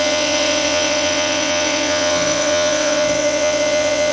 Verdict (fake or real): fake